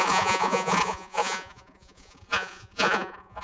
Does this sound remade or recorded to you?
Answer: remade